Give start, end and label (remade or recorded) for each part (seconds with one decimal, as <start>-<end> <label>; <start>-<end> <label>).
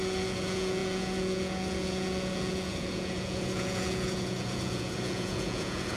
0.0-6.0 remade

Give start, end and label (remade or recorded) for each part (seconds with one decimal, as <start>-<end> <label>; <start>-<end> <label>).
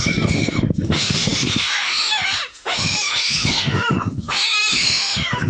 0.0-5.5 remade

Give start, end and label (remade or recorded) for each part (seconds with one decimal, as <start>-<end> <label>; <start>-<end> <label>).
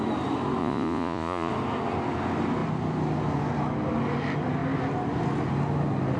0.0-0.6 recorded; 0.6-1.5 remade; 1.5-6.2 recorded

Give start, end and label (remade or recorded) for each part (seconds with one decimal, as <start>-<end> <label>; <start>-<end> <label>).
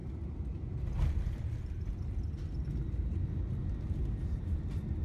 0.0-5.0 recorded